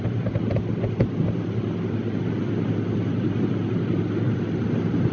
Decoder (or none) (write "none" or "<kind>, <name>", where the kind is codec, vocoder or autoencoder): none